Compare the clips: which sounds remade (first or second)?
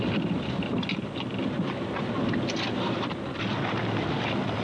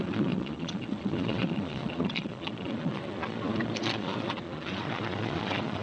second